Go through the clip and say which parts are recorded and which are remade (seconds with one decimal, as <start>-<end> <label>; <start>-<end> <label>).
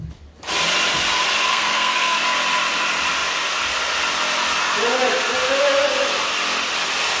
0.0-1.5 recorded; 1.5-2.2 remade; 2.2-7.2 recorded